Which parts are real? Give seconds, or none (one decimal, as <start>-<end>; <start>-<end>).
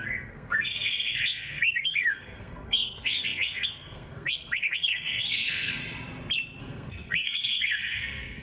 5.8-6.6